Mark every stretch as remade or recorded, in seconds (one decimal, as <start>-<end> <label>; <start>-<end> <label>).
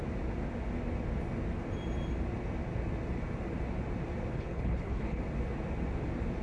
0.0-4.3 recorded; 4.3-5.2 remade; 5.2-6.4 recorded